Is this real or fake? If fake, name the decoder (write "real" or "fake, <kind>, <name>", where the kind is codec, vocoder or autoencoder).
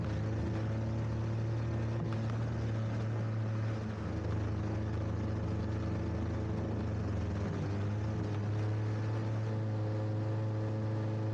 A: real